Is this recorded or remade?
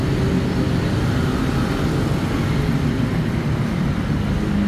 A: recorded